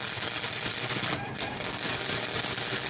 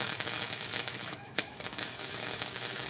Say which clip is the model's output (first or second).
second